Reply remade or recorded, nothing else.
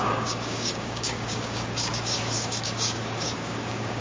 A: remade